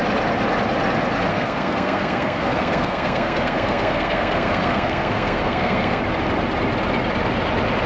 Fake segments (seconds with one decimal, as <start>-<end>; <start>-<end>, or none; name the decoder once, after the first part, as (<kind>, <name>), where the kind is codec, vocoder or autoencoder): 1.3-6.0 (codec, SNAC)